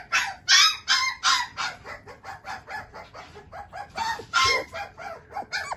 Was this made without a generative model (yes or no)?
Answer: yes